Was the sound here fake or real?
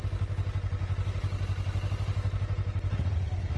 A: real